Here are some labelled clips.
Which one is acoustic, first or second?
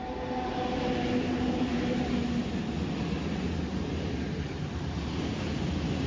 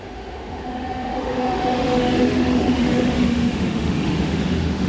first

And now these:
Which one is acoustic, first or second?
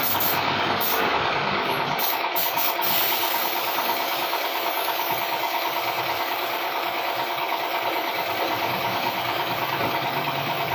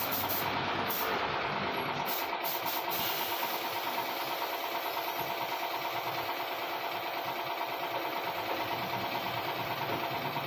second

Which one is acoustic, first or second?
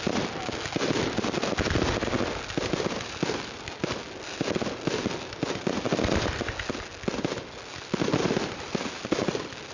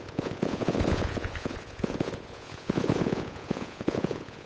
first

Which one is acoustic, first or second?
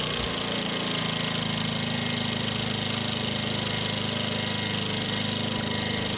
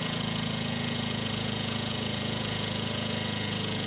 first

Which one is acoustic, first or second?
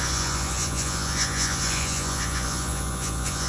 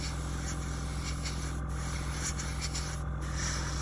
second